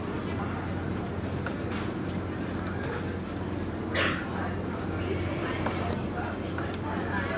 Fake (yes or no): no